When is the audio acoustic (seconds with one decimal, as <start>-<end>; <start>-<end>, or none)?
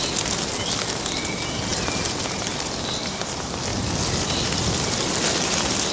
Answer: 0.0-5.9